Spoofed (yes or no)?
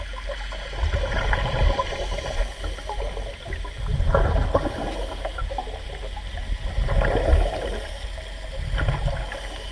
no